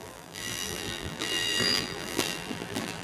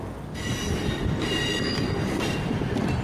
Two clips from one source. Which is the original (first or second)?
second